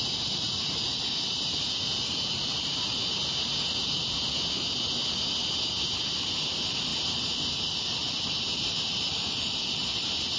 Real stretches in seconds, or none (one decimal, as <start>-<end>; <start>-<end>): 3.2-6.1